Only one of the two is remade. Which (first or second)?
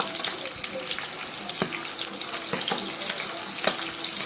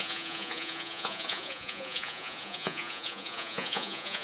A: second